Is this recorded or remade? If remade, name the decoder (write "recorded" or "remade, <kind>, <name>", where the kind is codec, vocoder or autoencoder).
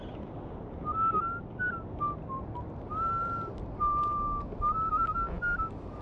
recorded